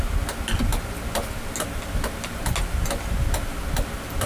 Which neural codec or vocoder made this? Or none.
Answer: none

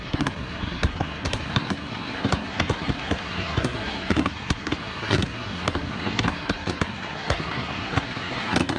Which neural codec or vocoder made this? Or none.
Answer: codec, SNAC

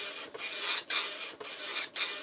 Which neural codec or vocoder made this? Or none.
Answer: none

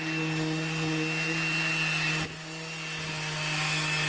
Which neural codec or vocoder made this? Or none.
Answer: none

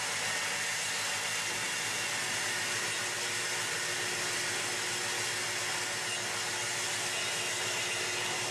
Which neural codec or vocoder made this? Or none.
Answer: none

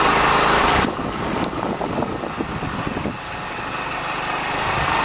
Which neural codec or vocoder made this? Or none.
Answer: none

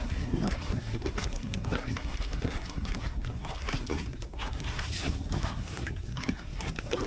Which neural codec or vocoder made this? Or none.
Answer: codec, SNAC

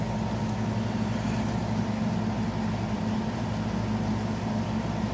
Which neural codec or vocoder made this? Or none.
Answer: none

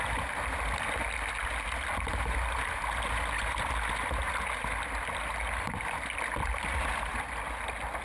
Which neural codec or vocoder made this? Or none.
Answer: none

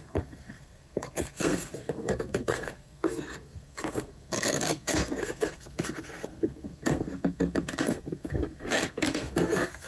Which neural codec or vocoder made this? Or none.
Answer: codec, SNAC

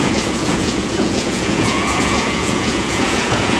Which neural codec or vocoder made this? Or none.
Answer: vocoder, Vocos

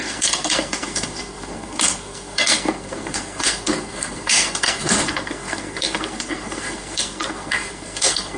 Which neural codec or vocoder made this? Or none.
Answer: codec, SNAC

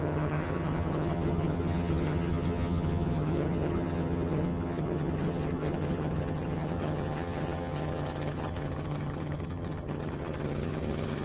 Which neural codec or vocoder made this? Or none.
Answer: vocoder, HiFi-GAN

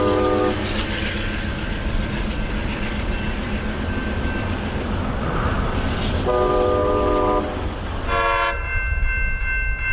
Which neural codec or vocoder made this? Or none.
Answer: none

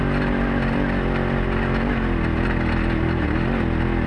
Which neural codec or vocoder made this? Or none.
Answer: none